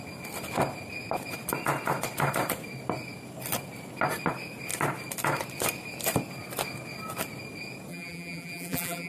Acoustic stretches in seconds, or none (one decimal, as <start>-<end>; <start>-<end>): 0.0-7.9